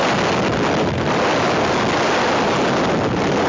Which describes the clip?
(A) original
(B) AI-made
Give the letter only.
A